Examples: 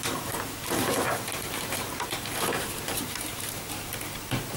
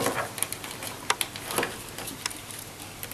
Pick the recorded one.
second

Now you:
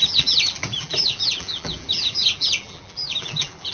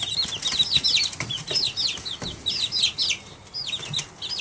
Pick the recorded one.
second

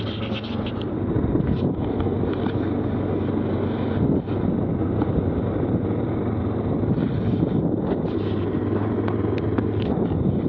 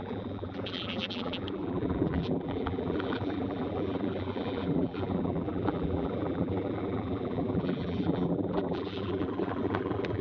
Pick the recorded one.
first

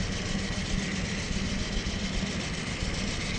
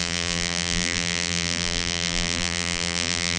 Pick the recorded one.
first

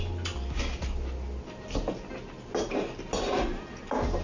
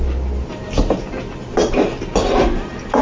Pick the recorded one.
first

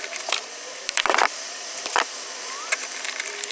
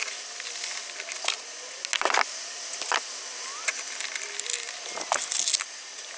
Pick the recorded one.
second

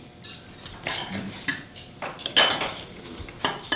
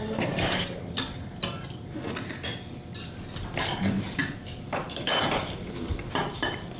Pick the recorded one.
first